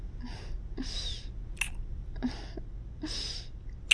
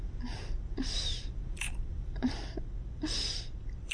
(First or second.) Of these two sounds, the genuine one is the first